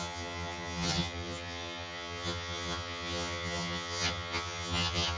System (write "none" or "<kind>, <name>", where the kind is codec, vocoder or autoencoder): vocoder, HiFi-GAN